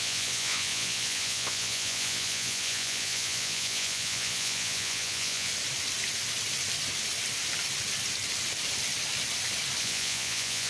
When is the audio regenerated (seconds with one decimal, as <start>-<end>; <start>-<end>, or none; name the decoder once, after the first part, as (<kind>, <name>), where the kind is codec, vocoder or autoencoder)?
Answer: 0.0-5.5 (vocoder, Vocos); 9.8-10.7